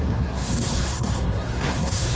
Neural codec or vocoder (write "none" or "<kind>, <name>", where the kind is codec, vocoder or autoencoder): codec, SNAC